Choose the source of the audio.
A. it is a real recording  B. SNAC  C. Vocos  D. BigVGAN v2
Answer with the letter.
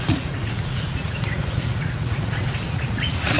C